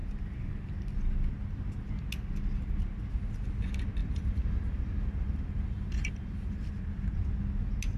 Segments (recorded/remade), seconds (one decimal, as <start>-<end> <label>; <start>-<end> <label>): 0.0-4.0 recorded; 4.0-6.7 remade; 6.7-8.0 recorded